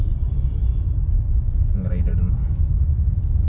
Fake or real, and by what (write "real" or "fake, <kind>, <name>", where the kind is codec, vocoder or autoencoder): fake, vocoder, BigVGAN v2